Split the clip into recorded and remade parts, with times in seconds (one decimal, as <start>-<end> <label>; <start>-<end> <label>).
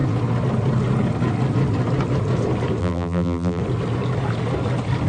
0.0-2.8 recorded; 2.8-3.6 remade; 3.6-5.1 recorded